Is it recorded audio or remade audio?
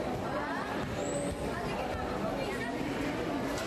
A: recorded